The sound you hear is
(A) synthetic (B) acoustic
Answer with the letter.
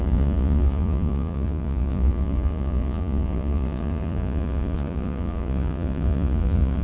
A